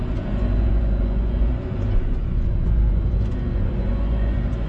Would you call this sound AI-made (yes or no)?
yes